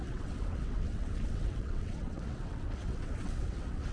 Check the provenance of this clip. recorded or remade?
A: remade